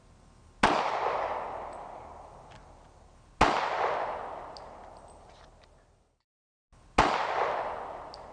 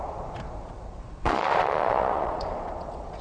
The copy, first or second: second